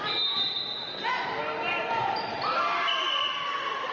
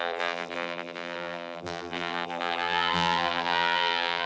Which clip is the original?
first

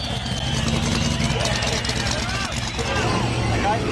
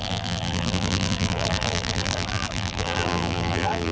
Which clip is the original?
first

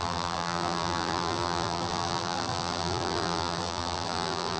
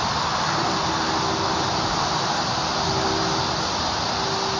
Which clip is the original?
second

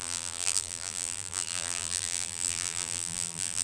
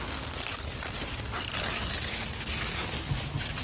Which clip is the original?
second